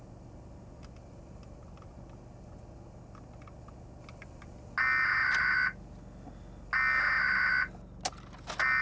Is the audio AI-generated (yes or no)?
no